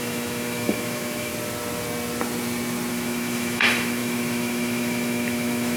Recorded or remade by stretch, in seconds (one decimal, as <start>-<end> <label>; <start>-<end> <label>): 0.0-1.3 remade; 1.3-2.9 recorded; 2.9-5.8 remade